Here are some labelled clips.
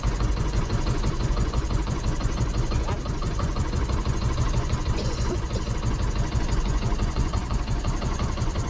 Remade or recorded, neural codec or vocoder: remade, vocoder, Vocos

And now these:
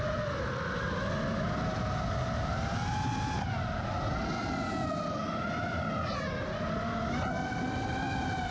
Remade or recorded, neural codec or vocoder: recorded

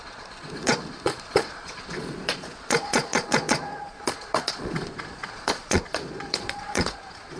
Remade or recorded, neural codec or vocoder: remade, vocoder, Vocos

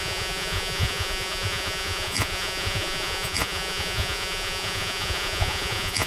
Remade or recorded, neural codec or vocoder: remade, vocoder, Vocos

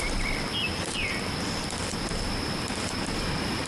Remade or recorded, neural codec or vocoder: recorded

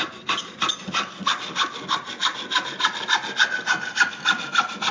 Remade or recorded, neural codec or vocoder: recorded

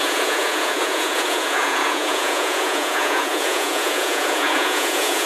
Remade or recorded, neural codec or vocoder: remade, vocoder, Vocos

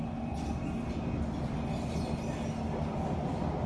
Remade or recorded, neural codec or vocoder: recorded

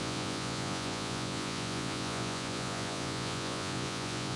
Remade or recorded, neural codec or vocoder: remade, vocoder, Vocos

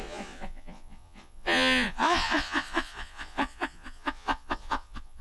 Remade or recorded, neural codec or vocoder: remade, vocoder, Vocos